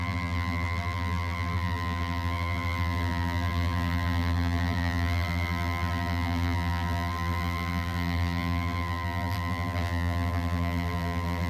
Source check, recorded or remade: remade